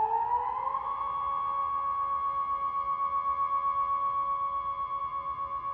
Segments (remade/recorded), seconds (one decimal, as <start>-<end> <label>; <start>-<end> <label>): 0.0-5.7 recorded